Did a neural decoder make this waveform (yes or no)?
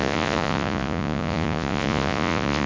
yes